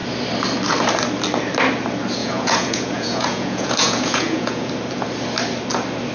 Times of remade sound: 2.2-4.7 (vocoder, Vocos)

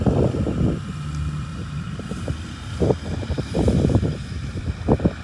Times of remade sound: 1.5-4.6 (vocoder, BigVGAN v2)

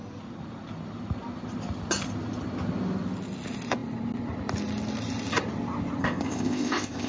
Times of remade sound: 6.0-7.1 (codec, ZipCodec)

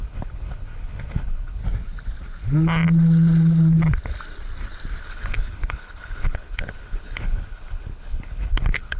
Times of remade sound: 0.0-1.6 (codec, HILCodec); 5.0-9.0

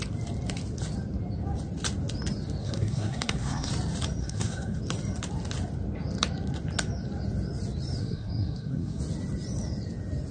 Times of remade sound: 2.6-3.7 (codec, SNAC); 4.2-4.8; 8.0-9.0

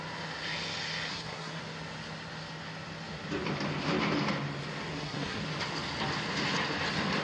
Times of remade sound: 1.1-1.6 (codec, SNAC); 4.9-5.4

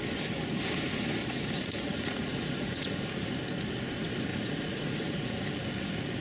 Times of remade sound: 1.2-3.0 (vocoder, Vocos); 4.3-5.4

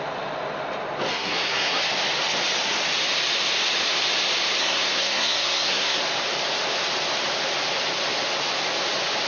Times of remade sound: 1.1-1.8 (codec, SNAC); 4.6-6.0